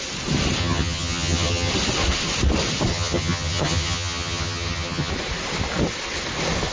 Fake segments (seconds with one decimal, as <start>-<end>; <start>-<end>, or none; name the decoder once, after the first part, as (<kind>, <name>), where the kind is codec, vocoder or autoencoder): 0.6-1.7 (vocoder, HiFi-GAN); 2.9-5.1